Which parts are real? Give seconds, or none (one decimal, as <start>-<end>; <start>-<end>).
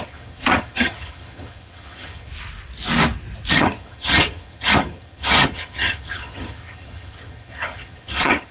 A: 2.3-3.5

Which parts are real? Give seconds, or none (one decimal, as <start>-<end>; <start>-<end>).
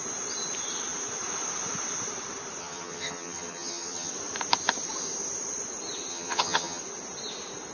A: 0.0-2.6; 4.1-6.1; 6.8-7.7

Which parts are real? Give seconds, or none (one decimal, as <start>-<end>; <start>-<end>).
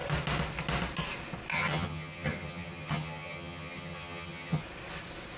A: 0.0-1.5; 4.6-5.4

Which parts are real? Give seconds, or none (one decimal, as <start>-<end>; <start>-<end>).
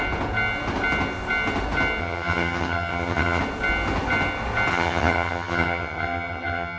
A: 0.0-2.0; 3.4-4.7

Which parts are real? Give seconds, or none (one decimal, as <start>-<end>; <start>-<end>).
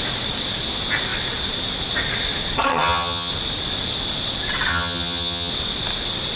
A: 0.0-2.7; 3.3-4.7; 5.5-6.4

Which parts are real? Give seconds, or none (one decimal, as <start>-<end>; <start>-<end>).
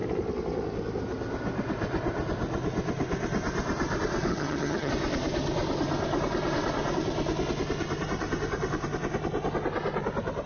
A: 0.0-4.3; 4.9-10.5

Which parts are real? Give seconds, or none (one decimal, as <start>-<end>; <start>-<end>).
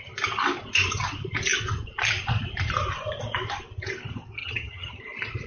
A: 0.0-4.4; 5.0-5.5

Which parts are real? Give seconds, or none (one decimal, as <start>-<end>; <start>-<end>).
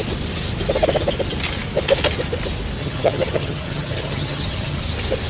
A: 0.0-2.8; 4.8-5.3